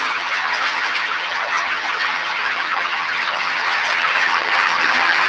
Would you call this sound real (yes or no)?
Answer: no